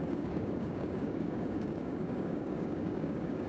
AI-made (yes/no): yes